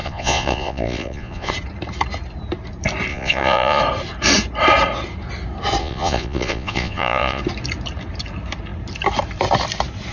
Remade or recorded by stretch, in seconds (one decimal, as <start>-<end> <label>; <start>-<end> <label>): 0.0-1.5 remade; 1.5-3.1 recorded; 3.1-3.8 remade; 3.8-5.8 recorded; 5.8-7.4 remade; 7.4-10.1 recorded